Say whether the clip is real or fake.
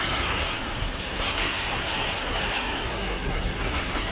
fake